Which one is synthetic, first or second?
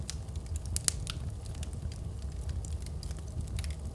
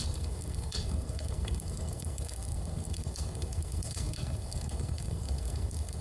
second